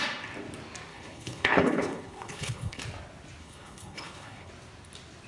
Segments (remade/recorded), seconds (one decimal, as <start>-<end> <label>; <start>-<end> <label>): 0.0-0.9 recorded; 0.9-2.8 remade; 2.8-3.4 recorded; 3.4-4.5 remade; 4.5-5.3 recorded